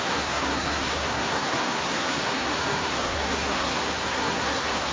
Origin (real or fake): fake